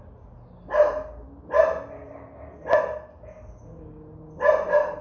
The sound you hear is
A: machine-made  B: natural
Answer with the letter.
B